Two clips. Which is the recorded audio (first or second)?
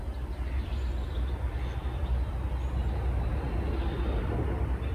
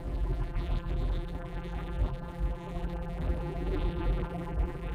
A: first